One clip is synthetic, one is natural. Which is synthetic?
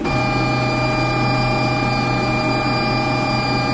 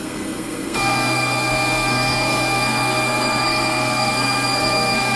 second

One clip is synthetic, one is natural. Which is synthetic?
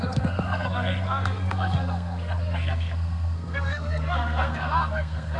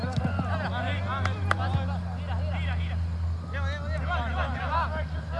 first